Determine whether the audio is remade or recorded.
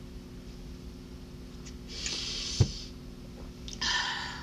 recorded